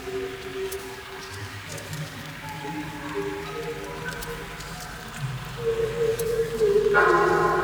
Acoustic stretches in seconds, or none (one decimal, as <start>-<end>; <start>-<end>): 0.0-0.5; 3.0-5.8; 6.8-7.6